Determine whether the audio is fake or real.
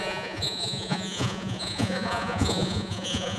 fake